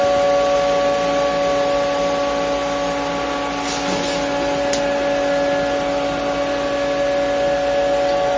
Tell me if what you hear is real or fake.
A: real